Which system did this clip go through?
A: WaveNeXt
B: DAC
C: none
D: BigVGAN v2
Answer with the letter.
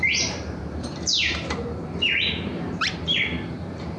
D